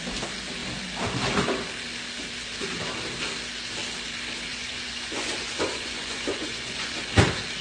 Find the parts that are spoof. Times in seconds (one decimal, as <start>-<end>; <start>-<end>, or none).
4.5-6.9

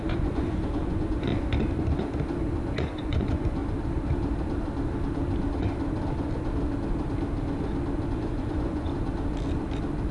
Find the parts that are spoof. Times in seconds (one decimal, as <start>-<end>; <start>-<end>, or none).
0.0-1.3; 2.8-3.6; 8.1-8.9

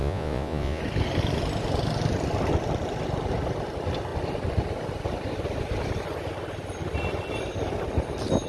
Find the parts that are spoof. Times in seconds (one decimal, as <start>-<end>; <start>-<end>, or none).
0.0-0.8

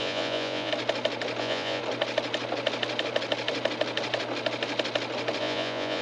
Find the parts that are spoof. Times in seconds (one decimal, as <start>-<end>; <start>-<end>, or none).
0.0-0.7; 1.4-1.8; 5.4-6.0